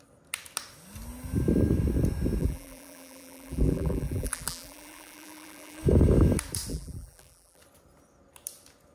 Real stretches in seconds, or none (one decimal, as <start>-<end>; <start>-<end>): 0.0-2.4; 5.8-6.7; 7.6-8.9